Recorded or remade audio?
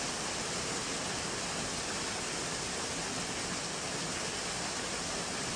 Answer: recorded